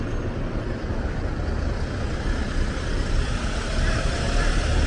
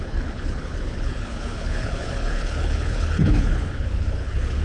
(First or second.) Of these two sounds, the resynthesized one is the second